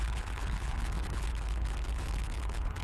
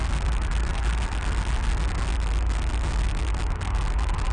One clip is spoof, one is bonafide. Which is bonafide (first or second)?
second